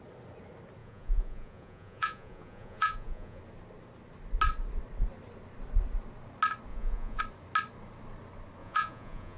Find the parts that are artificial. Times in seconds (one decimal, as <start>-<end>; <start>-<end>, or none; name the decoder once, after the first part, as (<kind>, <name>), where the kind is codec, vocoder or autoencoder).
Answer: 0.8-3.4 (vocoder, Vocos); 6.7-7.2; 8.6-9.4